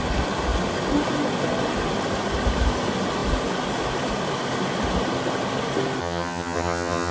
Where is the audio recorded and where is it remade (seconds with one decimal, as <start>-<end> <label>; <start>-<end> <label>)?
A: 0.0-6.0 recorded; 6.0-7.1 remade